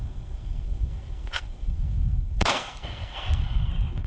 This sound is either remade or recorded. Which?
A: remade